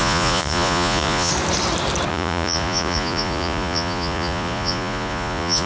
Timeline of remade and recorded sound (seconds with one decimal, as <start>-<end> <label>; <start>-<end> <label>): 0.0-1.3 remade; 1.3-2.1 recorded; 2.1-5.7 remade